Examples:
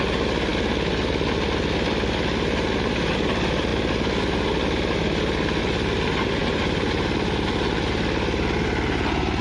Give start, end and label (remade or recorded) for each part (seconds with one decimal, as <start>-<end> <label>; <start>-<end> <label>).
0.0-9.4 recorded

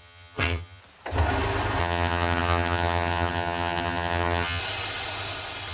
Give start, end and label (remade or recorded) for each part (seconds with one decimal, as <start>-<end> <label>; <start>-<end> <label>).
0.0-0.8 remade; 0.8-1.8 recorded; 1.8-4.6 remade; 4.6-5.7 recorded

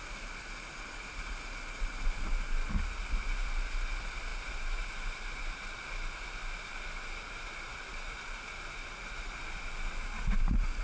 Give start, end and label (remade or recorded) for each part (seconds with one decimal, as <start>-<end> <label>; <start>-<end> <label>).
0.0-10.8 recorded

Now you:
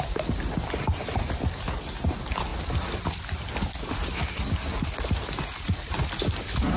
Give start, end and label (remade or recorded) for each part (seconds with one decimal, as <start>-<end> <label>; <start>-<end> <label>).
0.0-6.8 recorded

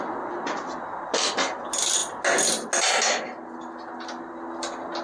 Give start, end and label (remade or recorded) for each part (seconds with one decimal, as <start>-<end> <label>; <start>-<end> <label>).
0.0-5.0 recorded